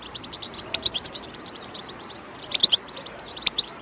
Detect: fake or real fake